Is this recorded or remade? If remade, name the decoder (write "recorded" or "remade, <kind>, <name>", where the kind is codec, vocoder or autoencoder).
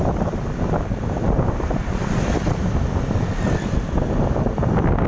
recorded